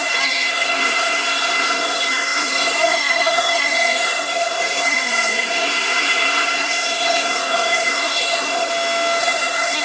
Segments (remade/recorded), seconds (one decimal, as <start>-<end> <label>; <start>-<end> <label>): 0.0-8.7 remade; 8.7-9.2 recorded; 9.2-9.8 remade